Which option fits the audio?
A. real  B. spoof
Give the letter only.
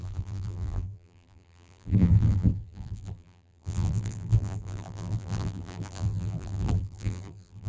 B